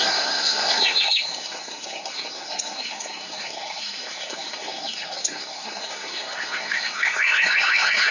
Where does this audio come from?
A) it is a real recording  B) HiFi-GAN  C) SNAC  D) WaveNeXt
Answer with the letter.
C